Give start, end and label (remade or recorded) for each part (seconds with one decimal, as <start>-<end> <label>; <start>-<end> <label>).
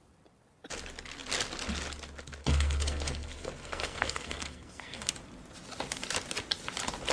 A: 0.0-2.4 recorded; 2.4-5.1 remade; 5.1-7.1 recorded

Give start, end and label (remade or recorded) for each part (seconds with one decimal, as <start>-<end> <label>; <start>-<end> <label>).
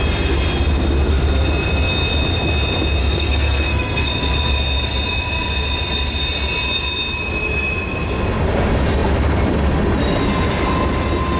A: 0.0-3.0 recorded; 3.0-4.1 remade; 4.1-11.4 recorded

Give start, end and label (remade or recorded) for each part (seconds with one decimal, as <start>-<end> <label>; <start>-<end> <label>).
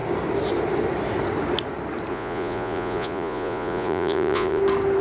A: 0.0-2.1 recorded; 2.1-4.6 remade; 4.6-5.0 recorded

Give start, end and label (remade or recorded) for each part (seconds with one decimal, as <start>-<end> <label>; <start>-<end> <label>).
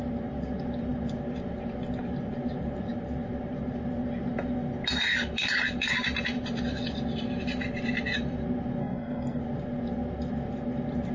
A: 0.0-8.8 recorded; 8.8-9.4 remade; 9.4-11.1 recorded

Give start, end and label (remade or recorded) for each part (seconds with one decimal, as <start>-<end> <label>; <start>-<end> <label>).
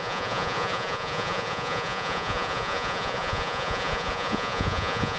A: 0.0-5.2 remade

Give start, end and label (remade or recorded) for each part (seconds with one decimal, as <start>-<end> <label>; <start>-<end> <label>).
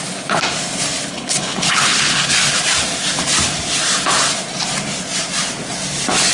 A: 0.0-1.1 recorded; 1.1-2.3 remade; 2.3-6.3 recorded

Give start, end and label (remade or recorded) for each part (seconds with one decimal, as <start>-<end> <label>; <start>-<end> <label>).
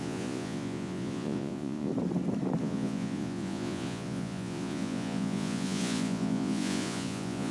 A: 0.0-1.9 remade; 1.9-2.6 recorded; 2.6-7.5 remade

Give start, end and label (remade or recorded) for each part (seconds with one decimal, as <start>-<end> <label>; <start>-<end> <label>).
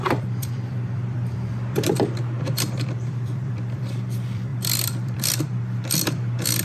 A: 0.0-6.6 remade